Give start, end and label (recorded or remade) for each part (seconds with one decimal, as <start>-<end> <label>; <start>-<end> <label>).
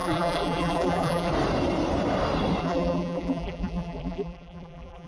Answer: 0.0-1.3 remade; 1.3-2.6 recorded; 2.6-5.1 remade